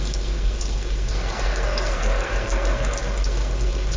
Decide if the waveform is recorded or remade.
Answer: remade